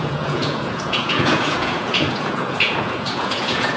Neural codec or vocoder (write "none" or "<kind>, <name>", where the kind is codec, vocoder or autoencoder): vocoder, Vocos